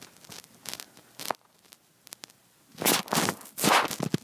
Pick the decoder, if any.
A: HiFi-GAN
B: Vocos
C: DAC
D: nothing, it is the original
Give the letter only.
D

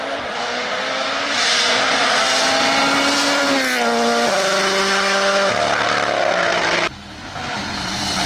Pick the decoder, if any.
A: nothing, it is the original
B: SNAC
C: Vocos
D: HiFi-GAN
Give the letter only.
A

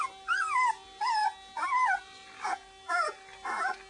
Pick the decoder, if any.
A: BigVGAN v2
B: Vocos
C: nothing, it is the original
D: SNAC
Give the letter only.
C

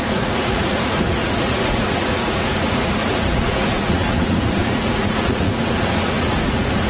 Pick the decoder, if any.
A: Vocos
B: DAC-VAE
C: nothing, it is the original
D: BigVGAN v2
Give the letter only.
A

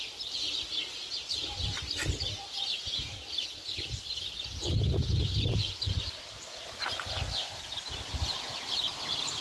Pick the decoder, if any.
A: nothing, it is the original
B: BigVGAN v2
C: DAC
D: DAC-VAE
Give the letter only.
A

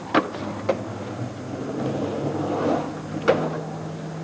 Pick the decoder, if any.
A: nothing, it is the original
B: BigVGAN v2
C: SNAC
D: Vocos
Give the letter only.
A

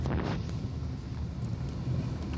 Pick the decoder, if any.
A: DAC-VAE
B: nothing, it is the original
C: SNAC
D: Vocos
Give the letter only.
B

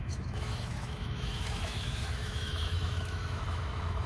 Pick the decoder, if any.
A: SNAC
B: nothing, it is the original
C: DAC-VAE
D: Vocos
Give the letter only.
C